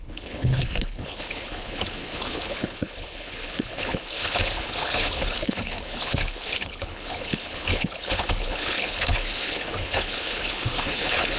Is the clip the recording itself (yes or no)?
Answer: no